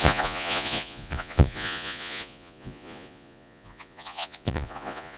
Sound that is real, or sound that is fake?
fake